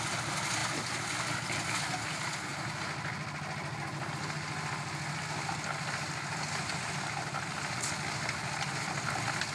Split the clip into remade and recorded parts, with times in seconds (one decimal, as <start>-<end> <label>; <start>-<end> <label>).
0.0-9.5 recorded